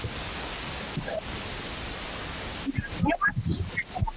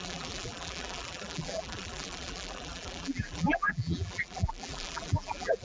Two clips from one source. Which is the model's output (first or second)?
second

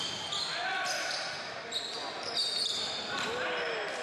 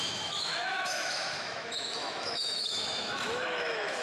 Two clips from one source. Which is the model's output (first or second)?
second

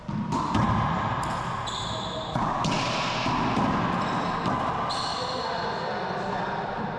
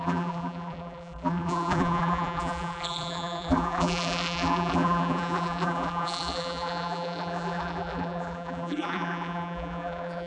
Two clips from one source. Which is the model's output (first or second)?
second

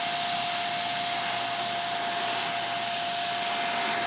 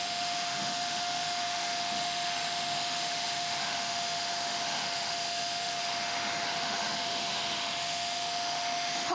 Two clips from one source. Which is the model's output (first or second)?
second